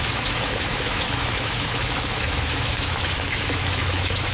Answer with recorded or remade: remade